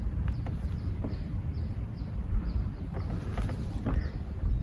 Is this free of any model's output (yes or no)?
yes